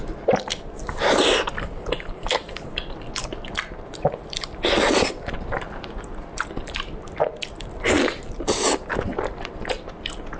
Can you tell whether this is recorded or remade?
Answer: recorded